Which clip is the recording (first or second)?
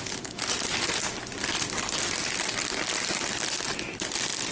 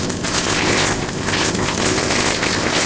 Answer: first